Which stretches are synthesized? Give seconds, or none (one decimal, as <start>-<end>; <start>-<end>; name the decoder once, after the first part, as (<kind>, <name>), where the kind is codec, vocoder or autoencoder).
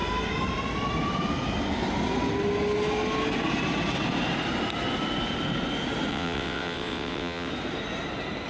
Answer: 6.1-7.5 (vocoder, WaveNeXt)